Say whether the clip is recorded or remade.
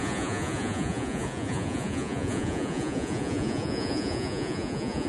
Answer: remade